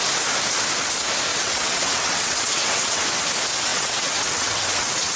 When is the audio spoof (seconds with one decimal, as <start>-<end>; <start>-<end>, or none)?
1.3-3.0; 3.7-5.2